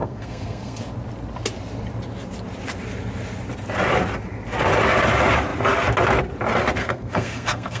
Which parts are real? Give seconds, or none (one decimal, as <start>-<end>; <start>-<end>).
0.8-6.8